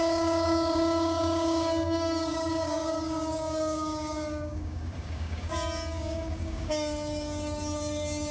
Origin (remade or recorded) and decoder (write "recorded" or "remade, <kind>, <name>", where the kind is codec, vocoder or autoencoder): remade, codec, DAC